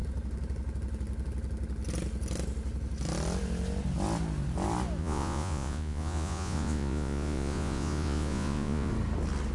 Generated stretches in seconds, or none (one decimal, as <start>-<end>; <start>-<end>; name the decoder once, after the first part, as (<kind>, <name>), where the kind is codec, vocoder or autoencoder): 5.0-8.9 (vocoder, Vocos)